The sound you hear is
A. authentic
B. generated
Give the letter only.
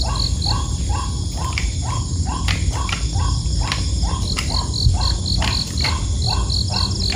A